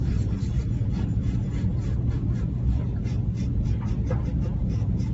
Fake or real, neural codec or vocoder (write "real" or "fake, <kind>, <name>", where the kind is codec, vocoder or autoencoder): real